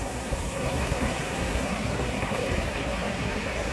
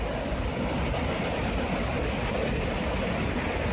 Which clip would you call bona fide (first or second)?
second